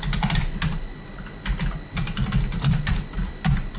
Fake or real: real